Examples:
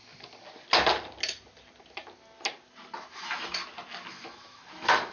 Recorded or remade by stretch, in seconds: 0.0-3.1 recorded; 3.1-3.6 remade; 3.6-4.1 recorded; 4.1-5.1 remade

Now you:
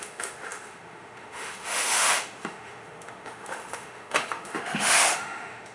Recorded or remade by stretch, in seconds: 0.0-5.7 remade

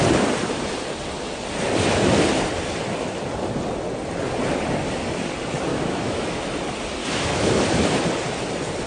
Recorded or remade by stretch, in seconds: 0.0-5.7 recorded; 5.7-6.4 remade; 6.4-7.0 recorded; 7.0-7.6 remade; 7.6-8.9 recorded

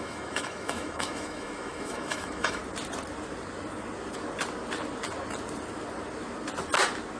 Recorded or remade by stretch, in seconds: 0.0-2.6 remade; 2.6-7.2 recorded

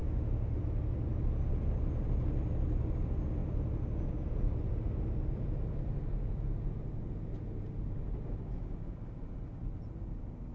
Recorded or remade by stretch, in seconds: 0.0-0.6 remade; 0.6-10.5 recorded

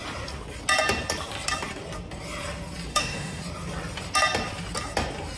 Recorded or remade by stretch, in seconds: 0.0-2.9 recorded; 2.9-3.4 remade; 3.4-5.4 recorded

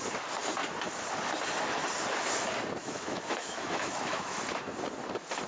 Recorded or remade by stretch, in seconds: 0.0-2.8 recorded; 2.8-4.4 remade; 4.4-5.5 recorded

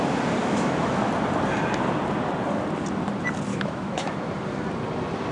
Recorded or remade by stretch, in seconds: 0.0-0.4 recorded; 0.4-1.1 remade; 1.1-3.5 recorded; 3.5-4.3 remade; 4.3-5.3 recorded